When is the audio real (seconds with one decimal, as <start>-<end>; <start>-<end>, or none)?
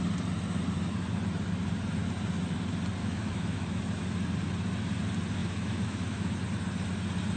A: 0.0-3.0; 3.8-5.4; 6.3-7.4